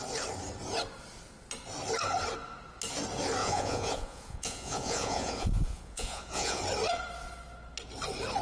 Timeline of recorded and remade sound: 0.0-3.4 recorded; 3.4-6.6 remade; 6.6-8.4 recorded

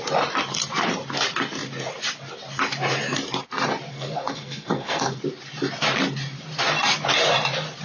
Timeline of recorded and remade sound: 0.0-3.9 recorded; 3.9-5.2 remade; 5.2-7.8 recorded

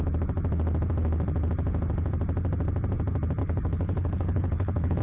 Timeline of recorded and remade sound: 0.0-3.4 recorded; 3.4-5.0 remade

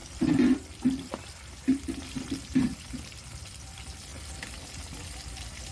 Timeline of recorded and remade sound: 0.0-4.1 remade; 4.1-5.2 recorded; 5.2-5.7 remade

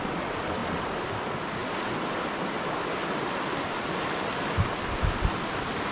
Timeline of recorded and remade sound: 0.0-0.6 recorded; 0.6-1.2 remade; 1.2-5.9 recorded

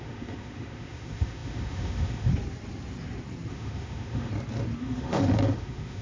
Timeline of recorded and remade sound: 0.0-2.3 remade; 2.3-3.5 recorded; 3.5-4.3 remade; 4.3-4.8 recorded; 4.8-6.0 remade

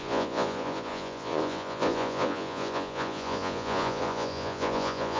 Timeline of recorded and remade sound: 0.0-5.2 remade